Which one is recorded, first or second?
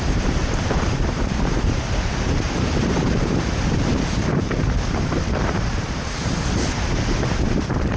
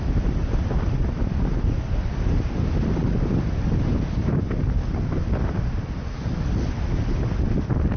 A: second